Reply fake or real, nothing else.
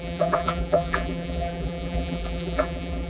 fake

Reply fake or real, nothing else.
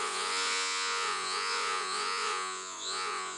fake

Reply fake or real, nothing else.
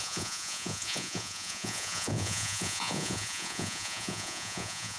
fake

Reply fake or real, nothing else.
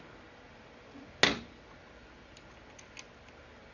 real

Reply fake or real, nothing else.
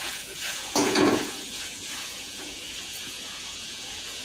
fake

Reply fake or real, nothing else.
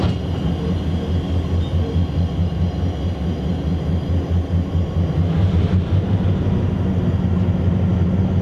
real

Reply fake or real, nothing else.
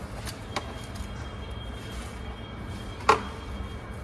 real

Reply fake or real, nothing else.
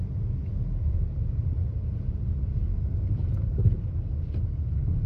real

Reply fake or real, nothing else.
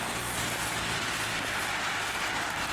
real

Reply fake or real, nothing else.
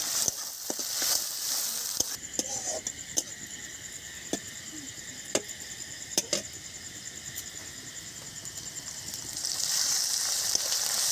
fake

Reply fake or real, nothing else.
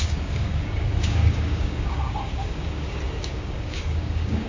fake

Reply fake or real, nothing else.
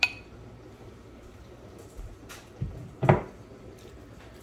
real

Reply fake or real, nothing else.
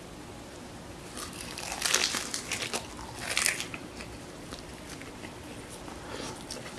real